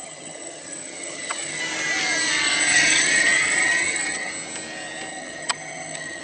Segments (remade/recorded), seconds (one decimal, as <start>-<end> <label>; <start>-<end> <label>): 0.0-1.6 remade; 1.6-2.7 recorded; 2.7-4.3 remade; 4.3-5.1 recorded; 5.1-6.2 remade